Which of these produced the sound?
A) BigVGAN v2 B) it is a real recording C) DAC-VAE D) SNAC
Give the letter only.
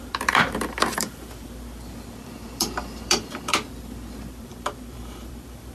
A